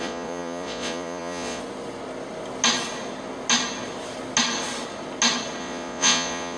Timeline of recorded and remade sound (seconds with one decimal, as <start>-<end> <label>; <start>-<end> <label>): 0.0-1.6 remade; 1.6-5.6 recorded; 5.6-6.6 remade